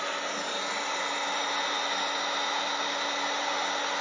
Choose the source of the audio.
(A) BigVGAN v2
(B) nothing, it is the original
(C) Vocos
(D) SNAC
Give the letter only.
B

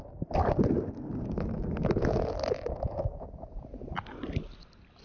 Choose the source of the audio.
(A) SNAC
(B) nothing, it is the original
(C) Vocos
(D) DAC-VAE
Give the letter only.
B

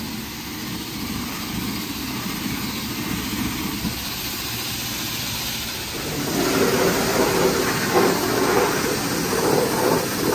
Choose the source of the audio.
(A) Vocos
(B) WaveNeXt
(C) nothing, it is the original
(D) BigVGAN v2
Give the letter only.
C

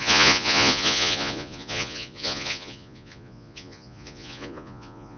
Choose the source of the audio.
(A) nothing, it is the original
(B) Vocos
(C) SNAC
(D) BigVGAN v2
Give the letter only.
B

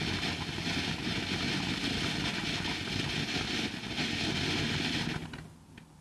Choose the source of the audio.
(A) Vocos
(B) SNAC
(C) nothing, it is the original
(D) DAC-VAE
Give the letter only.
C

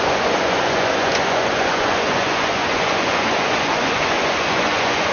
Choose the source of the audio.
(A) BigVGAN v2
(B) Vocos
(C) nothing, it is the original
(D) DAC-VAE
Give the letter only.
B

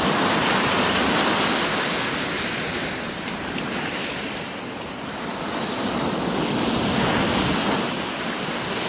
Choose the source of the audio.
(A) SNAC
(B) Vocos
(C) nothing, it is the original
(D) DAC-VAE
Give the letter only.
C